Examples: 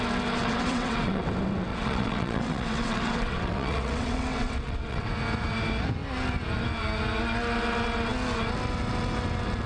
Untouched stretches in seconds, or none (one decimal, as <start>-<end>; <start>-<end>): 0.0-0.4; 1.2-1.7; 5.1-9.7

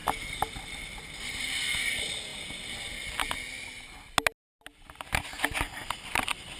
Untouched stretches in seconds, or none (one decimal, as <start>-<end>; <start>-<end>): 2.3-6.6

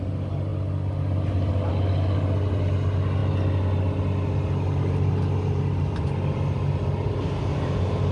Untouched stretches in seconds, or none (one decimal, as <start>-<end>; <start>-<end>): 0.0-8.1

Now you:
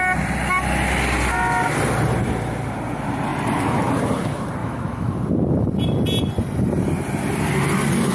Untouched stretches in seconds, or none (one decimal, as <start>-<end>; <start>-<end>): 0.0-4.6; 5.1-8.1

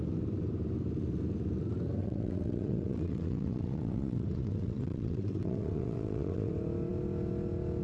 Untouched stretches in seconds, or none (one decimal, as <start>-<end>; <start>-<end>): 0.0-2.0; 6.5-7.8